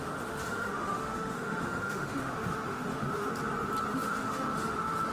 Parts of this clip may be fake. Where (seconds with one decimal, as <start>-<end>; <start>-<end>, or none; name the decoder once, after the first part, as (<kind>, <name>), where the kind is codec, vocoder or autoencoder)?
0.0-3.3 (autoencoder, DAC-VAE); 3.9-5.1